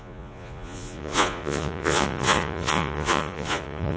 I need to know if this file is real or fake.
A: fake